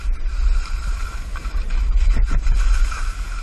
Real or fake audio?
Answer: real